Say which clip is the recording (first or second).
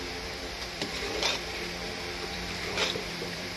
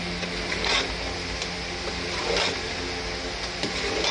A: second